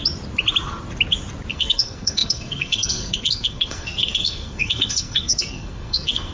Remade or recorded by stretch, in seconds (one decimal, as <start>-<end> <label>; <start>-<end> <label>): 0.0-1.5 recorded; 1.5-6.3 remade